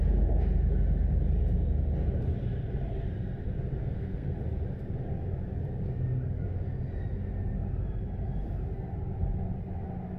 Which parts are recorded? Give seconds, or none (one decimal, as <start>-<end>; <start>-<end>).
0.0-3.8; 4.4-10.2